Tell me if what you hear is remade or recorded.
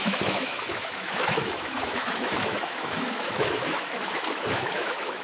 remade